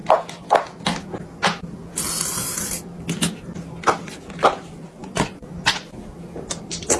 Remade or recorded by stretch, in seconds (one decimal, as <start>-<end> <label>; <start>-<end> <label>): 0.0-5.0 recorded; 5.0-5.9 remade; 5.9-7.0 recorded